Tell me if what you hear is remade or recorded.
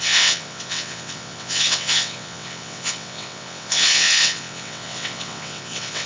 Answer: remade